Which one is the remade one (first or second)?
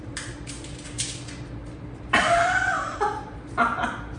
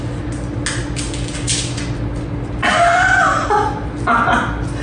first